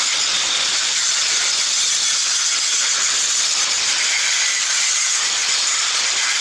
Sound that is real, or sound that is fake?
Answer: fake